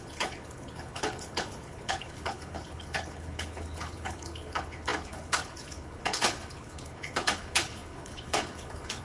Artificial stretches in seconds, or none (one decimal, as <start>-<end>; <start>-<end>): 0.0-9.0